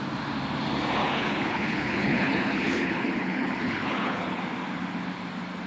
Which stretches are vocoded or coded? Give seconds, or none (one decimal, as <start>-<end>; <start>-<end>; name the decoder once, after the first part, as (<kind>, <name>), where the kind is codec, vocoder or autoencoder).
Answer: 1.0-4.4 (codec, HILCodec)